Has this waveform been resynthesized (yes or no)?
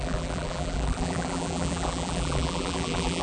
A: yes